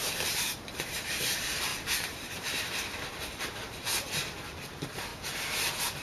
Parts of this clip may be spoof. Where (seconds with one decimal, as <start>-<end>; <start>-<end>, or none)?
0.0-5.1